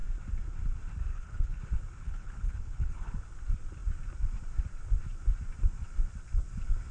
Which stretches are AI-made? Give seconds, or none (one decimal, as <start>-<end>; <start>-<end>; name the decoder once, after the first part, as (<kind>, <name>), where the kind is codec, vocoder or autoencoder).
1.1-1.6 (codec, HILCodec); 2.0-3.1